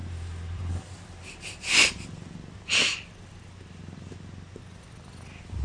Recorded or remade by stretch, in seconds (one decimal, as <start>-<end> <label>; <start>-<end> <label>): 0.0-0.7 remade; 0.7-5.6 recorded